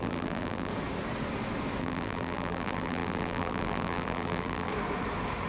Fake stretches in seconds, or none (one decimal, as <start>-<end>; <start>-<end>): 0.0-0.7; 1.8-4.7